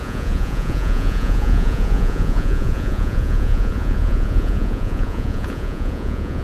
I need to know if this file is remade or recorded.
remade